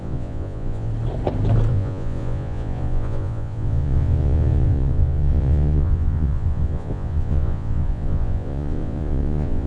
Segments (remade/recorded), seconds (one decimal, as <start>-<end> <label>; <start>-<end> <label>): 0.0-0.9 remade; 0.9-1.7 recorded; 1.7-9.7 remade